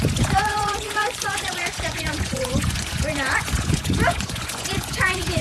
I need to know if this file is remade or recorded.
remade